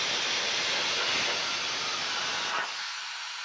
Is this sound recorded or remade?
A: recorded